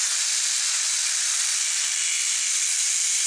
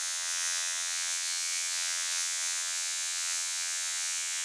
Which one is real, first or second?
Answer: first